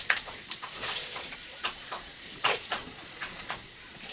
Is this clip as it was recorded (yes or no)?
no